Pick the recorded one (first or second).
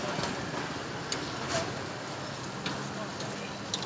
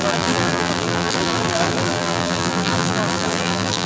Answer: first